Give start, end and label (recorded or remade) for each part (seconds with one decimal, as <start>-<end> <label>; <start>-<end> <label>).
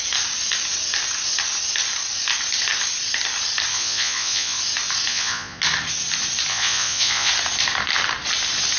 0.0-3.7 recorded; 3.7-4.6 remade; 4.6-5.1 recorded; 5.1-5.6 remade; 5.6-6.5 recorded; 6.5-7.3 remade; 7.3-8.8 recorded